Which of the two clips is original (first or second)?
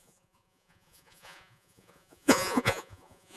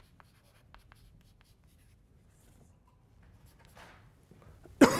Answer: second